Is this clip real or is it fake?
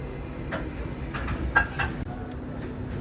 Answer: real